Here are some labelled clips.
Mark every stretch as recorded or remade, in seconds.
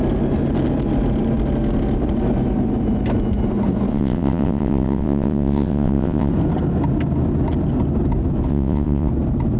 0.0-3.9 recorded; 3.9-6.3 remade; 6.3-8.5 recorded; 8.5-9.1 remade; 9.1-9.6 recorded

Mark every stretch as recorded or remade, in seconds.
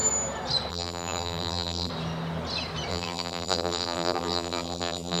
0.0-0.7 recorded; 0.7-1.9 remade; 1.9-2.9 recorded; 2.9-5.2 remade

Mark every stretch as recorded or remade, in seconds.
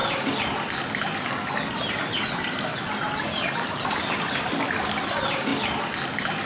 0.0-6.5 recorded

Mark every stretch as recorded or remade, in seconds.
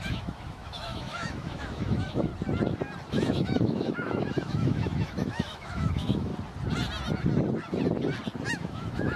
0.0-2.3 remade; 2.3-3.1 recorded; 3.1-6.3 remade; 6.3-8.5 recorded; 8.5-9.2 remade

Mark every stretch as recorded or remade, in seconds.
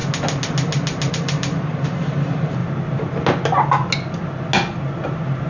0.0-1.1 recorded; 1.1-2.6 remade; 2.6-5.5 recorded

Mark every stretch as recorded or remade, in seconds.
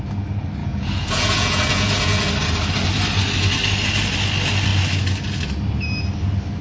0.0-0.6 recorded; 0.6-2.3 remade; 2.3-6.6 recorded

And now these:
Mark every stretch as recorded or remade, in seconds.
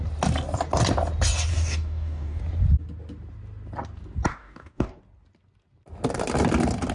0.0-1.5 recorded; 1.5-2.4 remade; 2.4-4.3 recorded; 4.3-5.0 remade; 5.0-6.9 recorded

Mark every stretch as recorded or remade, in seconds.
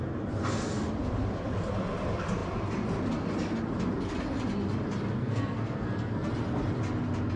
0.0-5.2 recorded; 5.2-6.3 remade; 6.3-7.4 recorded